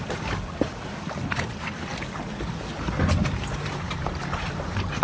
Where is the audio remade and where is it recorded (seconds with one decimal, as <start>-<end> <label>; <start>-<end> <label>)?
0.0-1.9 remade; 1.9-3.0 recorded; 3.0-5.0 remade